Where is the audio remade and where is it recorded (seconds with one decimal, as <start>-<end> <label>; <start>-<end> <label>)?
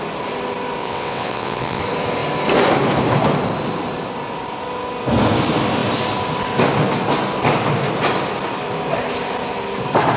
0.0-0.8 recorded; 0.8-1.8 remade; 1.8-10.2 recorded